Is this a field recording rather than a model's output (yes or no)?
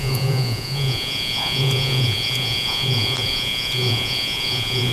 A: no